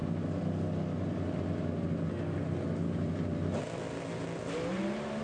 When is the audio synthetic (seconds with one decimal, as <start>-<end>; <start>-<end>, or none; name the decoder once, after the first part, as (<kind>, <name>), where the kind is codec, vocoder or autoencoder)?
none